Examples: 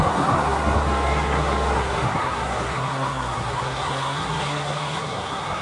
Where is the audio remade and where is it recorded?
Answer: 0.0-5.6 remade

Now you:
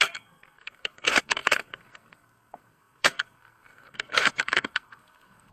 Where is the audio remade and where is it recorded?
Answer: 0.0-5.5 remade

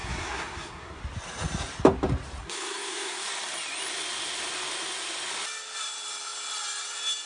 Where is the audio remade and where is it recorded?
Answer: 0.0-1.0 remade; 1.0-2.4 recorded; 2.4-3.2 remade; 3.2-7.3 recorded